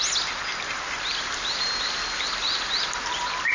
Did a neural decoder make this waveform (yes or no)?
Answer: no